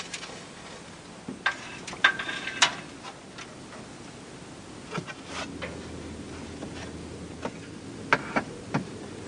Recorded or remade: recorded